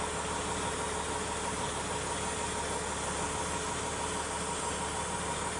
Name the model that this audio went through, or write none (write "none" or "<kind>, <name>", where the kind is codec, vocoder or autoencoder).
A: none